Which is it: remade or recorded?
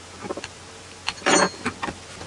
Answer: recorded